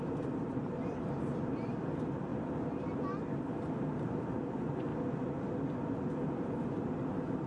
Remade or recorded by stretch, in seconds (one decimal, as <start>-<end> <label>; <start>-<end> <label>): 0.0-4.9 remade; 4.9-6.0 recorded; 6.0-7.5 remade